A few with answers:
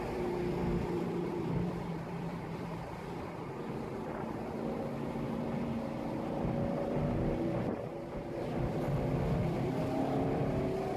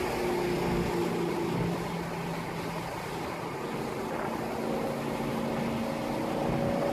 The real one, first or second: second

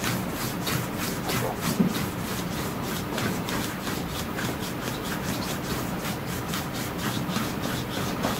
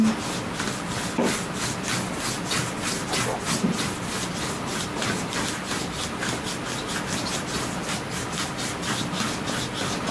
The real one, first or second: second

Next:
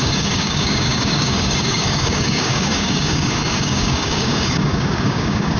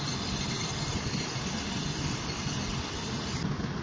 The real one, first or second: second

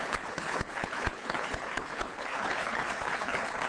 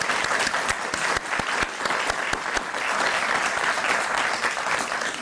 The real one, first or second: second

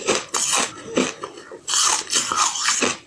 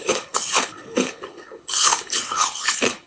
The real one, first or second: first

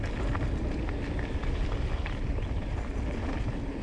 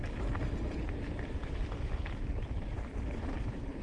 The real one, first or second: first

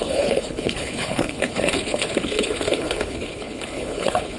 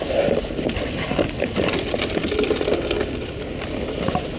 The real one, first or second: second